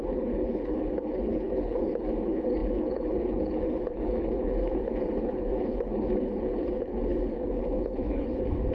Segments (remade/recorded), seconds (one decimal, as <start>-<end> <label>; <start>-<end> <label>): 0.0-8.7 remade